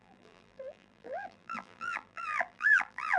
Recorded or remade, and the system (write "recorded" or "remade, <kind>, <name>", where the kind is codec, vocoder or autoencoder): remade, vocoder, BigVGAN v2